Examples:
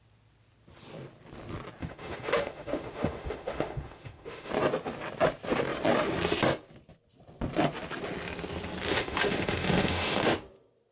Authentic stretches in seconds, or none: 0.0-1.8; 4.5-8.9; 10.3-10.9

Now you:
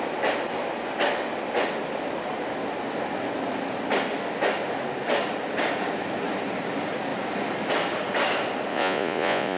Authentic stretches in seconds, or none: 0.0-8.7

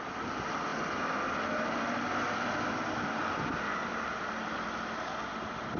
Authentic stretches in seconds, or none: 0.0-5.8